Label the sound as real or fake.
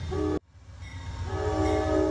real